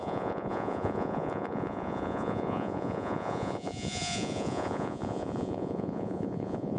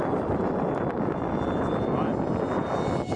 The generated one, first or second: first